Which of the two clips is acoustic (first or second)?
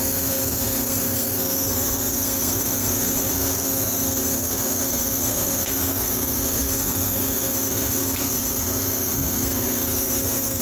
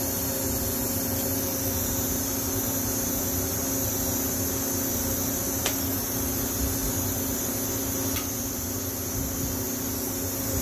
second